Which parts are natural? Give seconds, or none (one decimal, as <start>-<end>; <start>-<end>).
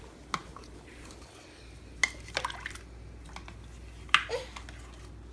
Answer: 0.0-5.3